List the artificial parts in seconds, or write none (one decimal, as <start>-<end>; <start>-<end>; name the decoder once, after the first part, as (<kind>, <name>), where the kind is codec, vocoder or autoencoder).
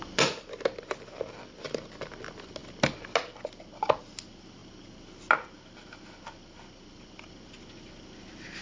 none